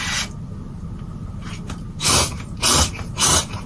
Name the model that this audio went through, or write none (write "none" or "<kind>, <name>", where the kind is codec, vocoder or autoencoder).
vocoder, BigVGAN v2